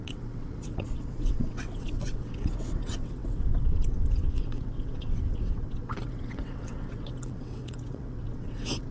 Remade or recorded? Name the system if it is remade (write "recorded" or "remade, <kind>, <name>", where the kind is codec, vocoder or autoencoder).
remade, vocoder, WaveNeXt